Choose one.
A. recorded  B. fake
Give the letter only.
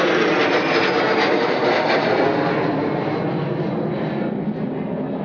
A